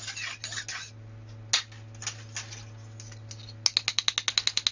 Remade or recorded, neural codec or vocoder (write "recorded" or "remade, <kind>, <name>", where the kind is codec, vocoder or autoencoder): recorded